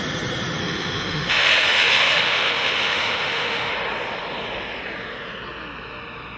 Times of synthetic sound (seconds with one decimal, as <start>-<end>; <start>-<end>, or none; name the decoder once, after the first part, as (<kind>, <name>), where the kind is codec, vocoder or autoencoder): 0.6-3.7 (autoencoder, DAC-VAE)